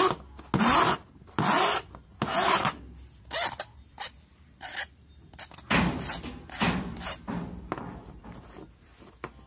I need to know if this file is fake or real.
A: real